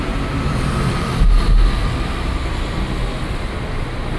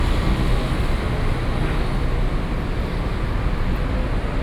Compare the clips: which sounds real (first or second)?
second